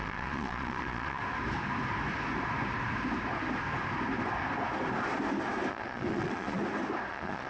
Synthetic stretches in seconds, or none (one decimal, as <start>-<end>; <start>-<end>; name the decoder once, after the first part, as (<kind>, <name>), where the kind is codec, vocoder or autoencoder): 0.0-1.2 (vocoder, Vocos); 5.7-6.6; 7.1-7.5